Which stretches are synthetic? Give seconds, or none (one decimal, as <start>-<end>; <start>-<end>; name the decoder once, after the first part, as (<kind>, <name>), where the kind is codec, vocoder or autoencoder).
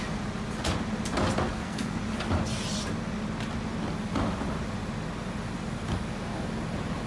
1.5-2.0 (codec, SNAC)